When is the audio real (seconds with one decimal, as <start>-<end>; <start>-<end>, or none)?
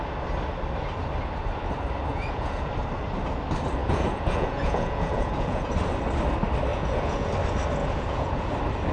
0.0-2.1; 2.7-3.8; 5.7-6.7; 7.3-7.8; 8.5-8.9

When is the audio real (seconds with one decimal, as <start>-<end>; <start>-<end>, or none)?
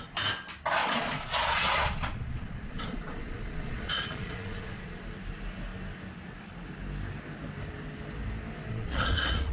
0.0-0.8; 5.0-8.7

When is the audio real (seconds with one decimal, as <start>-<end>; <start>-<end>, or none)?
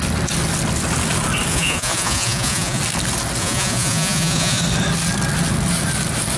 0.0-1.5; 2.8-3.4; 4.6-6.4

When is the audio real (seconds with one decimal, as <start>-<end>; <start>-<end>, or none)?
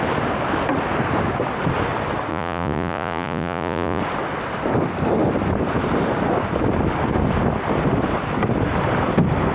0.0-2.3; 4.0-9.5